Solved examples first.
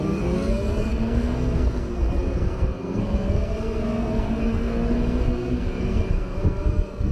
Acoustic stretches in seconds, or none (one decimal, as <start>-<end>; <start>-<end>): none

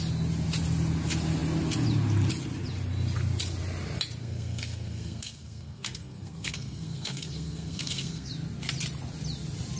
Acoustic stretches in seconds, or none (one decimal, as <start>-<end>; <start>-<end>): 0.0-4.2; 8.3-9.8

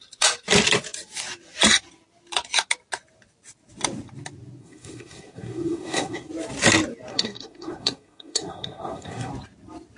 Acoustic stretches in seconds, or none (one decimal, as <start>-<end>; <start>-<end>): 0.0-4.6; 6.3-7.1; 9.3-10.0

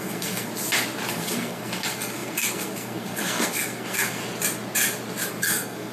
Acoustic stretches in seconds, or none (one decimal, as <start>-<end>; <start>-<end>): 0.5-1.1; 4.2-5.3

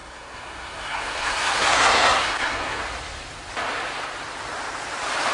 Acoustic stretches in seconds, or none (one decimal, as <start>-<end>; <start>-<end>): 2.8-5.3

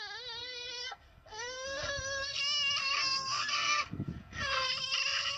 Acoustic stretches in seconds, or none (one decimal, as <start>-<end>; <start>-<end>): 0.0-0.4; 2.4-2.8; 4.7-5.4

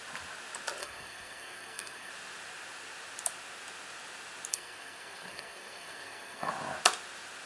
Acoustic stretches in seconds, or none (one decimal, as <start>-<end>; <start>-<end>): 0.0-0.8; 2.1-4.5; 6.5-7.5